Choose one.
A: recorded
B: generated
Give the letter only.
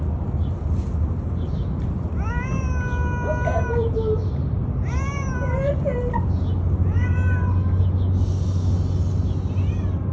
A